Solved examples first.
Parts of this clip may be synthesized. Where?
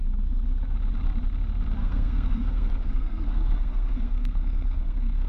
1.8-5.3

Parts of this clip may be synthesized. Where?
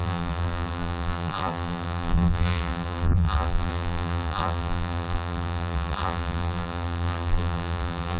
0.0-8.2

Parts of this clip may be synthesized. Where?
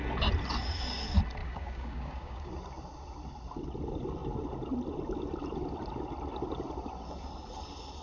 1.4-2.5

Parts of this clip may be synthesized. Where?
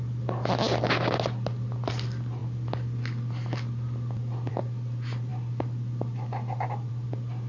none